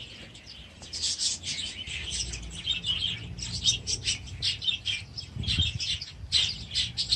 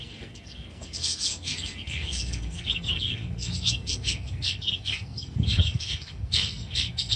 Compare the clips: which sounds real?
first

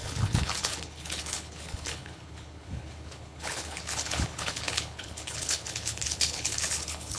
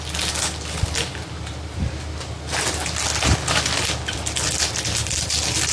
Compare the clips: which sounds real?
second